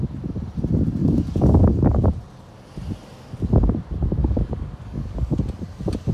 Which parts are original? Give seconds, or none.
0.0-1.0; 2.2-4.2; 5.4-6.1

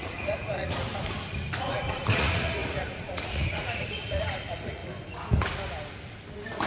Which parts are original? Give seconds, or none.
0.9-1.6; 4.8-6.7